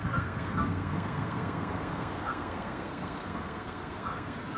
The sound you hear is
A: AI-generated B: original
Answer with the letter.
A